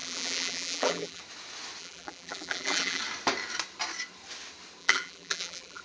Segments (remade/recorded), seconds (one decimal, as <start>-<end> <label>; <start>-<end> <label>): 0.0-1.2 remade; 1.2-1.8 recorded; 1.8-3.0 remade; 3.0-4.8 recorded; 4.8-5.8 remade

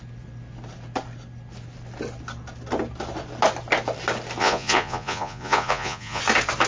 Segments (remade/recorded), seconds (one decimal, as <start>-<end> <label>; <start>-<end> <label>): 0.0-4.4 recorded; 4.4-6.2 remade; 6.2-6.7 recorded